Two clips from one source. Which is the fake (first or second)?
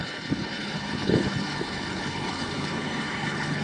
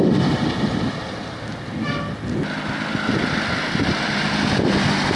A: first